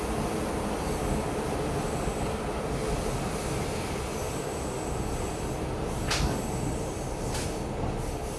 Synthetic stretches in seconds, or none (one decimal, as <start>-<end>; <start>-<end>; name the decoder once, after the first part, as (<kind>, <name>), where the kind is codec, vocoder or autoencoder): none